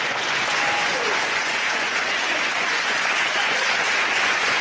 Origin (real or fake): fake